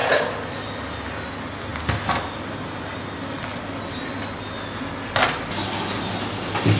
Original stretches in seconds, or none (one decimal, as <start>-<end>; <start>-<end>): 0.0-6.8